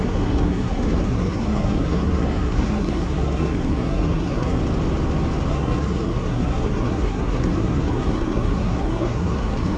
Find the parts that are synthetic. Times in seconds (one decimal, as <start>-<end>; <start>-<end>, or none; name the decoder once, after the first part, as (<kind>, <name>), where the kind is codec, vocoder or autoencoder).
0.0-4.6 (codec, SNAC); 5.5-9.8

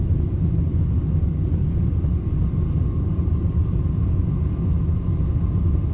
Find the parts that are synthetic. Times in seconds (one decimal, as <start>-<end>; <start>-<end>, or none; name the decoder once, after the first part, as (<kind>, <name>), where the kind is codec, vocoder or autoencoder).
none